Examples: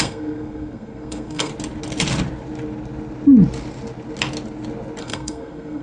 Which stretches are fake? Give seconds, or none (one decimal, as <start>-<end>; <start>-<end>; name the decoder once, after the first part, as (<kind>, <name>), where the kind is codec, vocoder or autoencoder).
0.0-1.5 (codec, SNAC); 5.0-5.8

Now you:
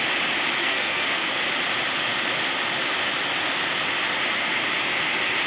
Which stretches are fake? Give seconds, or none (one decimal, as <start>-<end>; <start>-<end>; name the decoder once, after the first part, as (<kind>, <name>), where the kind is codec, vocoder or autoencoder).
0.6-1.4 (codec, SNAC)

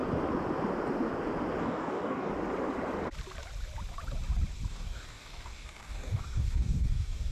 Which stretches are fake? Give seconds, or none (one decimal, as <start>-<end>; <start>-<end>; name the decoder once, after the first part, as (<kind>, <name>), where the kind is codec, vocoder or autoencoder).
1.6-2.3 (codec, DAC); 4.7-7.3

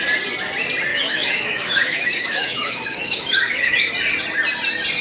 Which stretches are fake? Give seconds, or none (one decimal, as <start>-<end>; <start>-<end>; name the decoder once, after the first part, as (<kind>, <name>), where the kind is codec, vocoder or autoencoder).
0.9-3.9 (autoencoder, DAC-VAE)

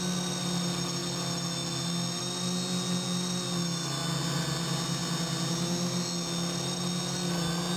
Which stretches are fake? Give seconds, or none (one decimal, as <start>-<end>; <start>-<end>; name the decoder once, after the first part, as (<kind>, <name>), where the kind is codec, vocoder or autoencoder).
none